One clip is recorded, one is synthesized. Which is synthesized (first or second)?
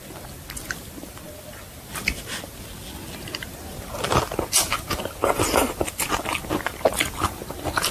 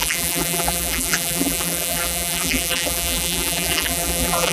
second